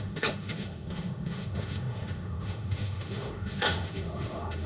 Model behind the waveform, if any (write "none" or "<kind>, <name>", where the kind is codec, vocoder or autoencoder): autoencoder, DAC-VAE